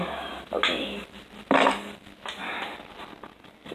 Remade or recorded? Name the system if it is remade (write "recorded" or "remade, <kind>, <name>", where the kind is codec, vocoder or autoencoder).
recorded